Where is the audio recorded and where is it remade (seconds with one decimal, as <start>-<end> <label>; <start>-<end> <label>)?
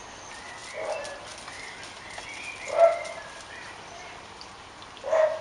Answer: 0.0-5.4 recorded